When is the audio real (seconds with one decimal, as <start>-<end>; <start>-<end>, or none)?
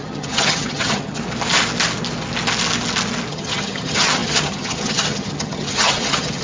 1.2-3.3